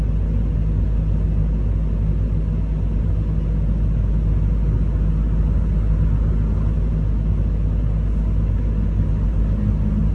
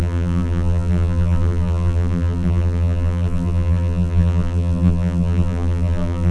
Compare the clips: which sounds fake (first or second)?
second